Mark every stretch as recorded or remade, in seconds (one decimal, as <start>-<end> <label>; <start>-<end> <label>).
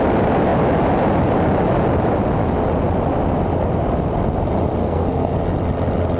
0.0-4.8 recorded; 4.8-5.4 remade; 5.4-6.2 recorded